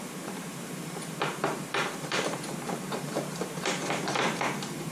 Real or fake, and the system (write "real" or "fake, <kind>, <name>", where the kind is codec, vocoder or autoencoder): fake, vocoder, BigVGAN v2